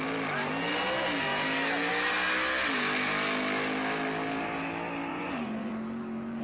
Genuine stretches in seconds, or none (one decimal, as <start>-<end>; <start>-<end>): 0.0-5.1; 5.7-6.4